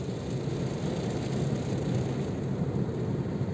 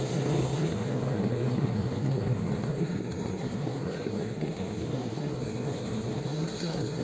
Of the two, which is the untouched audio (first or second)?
first